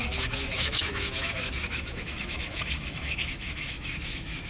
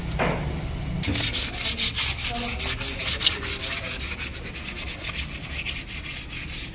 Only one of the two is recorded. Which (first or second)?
second